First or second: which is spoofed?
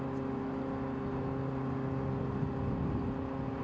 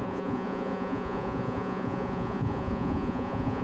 second